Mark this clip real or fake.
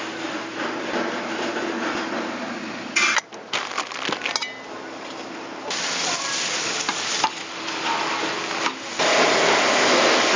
real